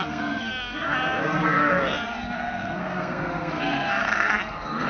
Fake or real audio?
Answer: fake